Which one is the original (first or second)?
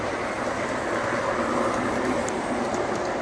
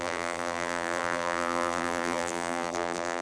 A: first